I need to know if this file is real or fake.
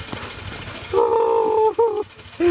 real